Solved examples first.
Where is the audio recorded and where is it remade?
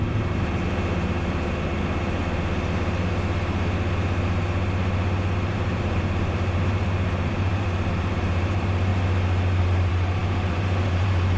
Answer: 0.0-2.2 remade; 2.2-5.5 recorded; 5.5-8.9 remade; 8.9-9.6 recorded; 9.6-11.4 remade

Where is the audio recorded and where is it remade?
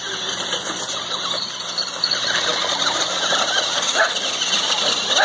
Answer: 0.0-5.2 recorded